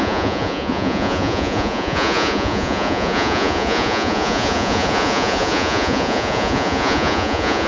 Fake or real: fake